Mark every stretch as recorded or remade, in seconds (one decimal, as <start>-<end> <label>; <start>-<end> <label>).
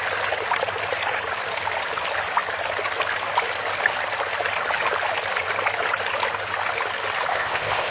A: 0.0-7.3 recorded; 7.3-7.9 remade